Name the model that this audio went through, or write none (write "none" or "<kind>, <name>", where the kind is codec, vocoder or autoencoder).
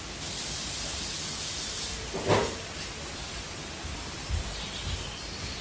vocoder, BigVGAN v2